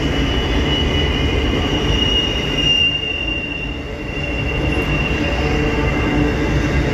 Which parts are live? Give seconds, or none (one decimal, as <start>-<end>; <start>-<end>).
0.0-1.3; 5.4-6.9